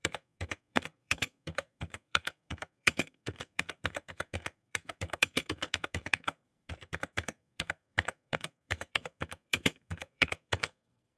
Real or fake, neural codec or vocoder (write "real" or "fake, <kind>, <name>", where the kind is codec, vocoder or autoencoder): fake, codec, SNAC